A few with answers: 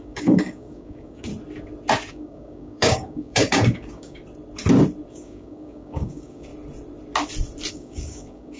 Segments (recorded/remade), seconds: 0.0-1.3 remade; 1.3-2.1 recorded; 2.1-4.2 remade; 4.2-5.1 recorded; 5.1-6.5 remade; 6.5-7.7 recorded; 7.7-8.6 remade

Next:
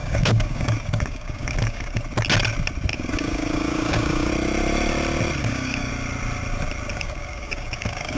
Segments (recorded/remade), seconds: 0.0-2.0 remade; 2.0-2.9 recorded; 2.9-4.3 remade; 4.3-5.4 recorded; 5.4-5.9 remade; 5.9-6.9 recorded; 6.9-8.2 remade